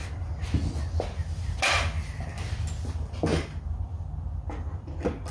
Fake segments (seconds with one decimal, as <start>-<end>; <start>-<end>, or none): none